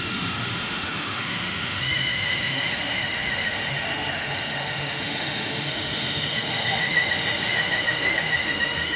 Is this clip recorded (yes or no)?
no